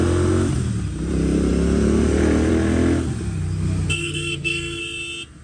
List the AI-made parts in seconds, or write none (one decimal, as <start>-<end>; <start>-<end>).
4.0-4.8